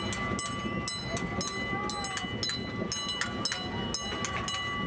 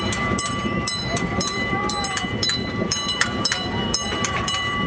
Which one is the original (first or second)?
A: first